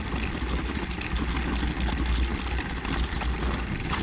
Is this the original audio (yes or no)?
yes